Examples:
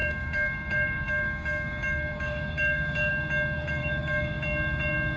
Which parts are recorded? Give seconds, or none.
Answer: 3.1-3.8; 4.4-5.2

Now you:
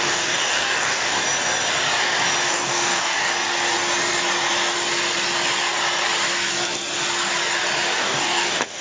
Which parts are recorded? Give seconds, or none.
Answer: 1.2-2.5; 3.3-8.0

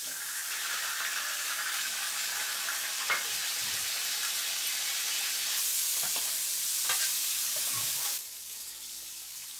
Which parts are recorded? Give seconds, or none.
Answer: 0.4-1.4; 2.3-7.1

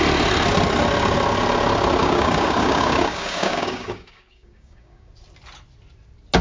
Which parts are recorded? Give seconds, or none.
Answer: 0.0-2.0; 5.1-6.4

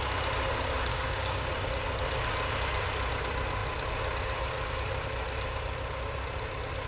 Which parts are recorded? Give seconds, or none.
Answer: 0.0-0.9; 1.5-6.9

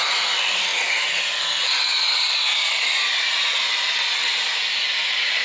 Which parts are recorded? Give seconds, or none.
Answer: 0.0-5.4

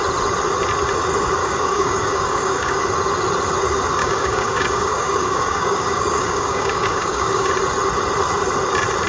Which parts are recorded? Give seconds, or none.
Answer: 0.0-1.4; 2.8-4.0; 7.5-9.1